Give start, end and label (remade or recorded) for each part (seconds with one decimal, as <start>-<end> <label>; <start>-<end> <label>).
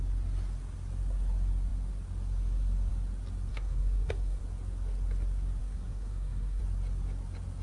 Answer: 0.0-3.5 recorded; 3.5-4.4 remade; 4.4-5.6 recorded; 5.6-6.6 remade; 6.6-7.6 recorded